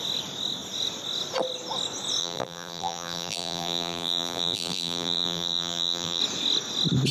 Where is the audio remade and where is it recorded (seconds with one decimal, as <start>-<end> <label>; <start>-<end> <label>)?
0.0-2.2 recorded; 2.2-6.2 remade; 6.2-7.1 recorded

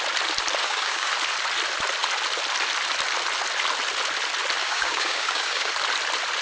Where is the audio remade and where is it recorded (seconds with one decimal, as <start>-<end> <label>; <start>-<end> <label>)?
0.0-0.6 recorded; 0.6-1.1 remade; 1.1-4.6 recorded; 4.6-5.7 remade; 5.7-6.4 recorded

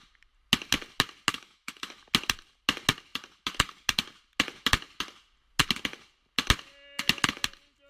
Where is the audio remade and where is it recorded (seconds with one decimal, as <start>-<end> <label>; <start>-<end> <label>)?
0.0-1.3 recorded; 1.3-1.9 remade; 1.9-7.9 recorded

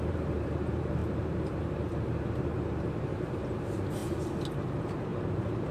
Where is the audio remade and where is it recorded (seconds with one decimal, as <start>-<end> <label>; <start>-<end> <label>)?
0.0-4.0 remade; 4.0-4.6 recorded; 4.6-5.7 remade